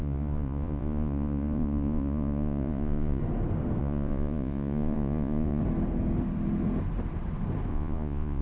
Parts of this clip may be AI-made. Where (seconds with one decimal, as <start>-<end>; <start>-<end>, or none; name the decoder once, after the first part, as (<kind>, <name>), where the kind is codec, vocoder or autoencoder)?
0.0-3.2 (vocoder, Vocos); 3.8-5.6; 7.7-8.4